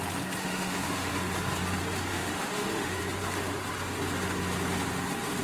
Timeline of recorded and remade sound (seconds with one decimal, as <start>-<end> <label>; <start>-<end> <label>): 0.0-0.4 recorded; 0.4-1.1 remade; 1.1-2.1 recorded; 2.1-3.0 remade; 3.0-5.4 recorded